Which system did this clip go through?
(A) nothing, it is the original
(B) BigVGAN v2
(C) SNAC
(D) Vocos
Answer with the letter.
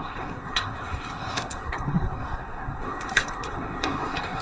C